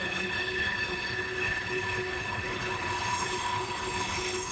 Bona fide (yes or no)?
no